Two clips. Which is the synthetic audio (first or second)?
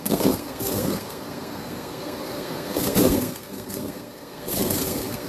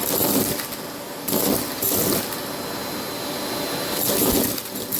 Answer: first